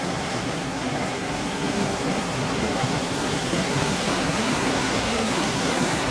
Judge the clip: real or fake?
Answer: fake